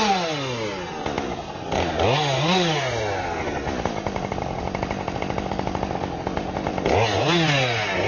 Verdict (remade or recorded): recorded